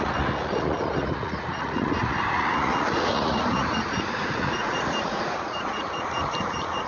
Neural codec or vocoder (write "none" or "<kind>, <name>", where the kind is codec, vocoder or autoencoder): vocoder, Vocos